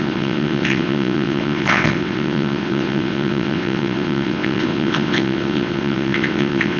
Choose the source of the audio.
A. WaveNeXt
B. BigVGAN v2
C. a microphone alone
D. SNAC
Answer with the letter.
A